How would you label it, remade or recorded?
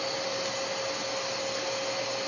recorded